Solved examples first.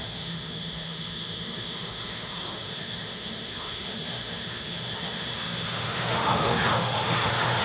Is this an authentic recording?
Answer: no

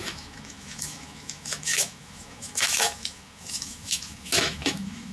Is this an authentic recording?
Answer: no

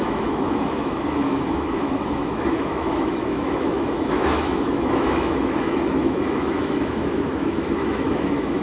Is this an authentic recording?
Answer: no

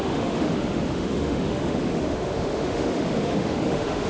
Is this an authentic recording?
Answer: no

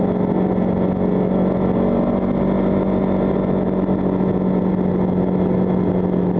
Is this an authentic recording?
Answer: yes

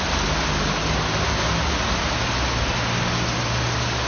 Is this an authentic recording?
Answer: yes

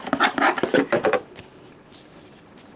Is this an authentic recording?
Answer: yes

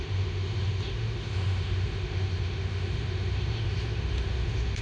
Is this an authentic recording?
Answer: no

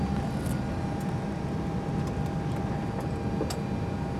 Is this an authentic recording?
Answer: yes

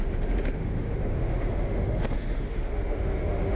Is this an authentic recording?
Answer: no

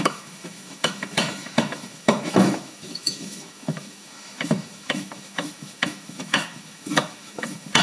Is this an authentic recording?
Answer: no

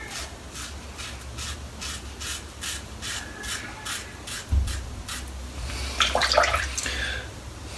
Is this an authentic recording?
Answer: yes